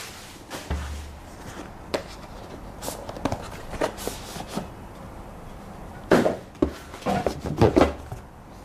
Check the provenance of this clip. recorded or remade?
recorded